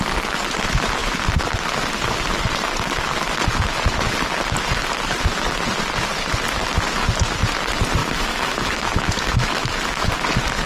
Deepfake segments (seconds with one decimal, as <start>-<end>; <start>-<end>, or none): 8.0-10.1